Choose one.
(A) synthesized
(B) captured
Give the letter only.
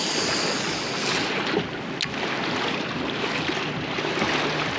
B